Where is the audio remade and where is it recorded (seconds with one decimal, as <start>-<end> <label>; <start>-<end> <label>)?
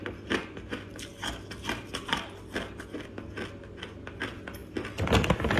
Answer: 0.0-5.6 recorded